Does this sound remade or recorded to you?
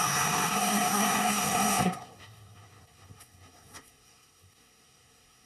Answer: remade